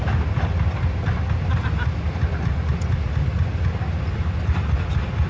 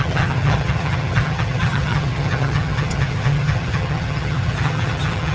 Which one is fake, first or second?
second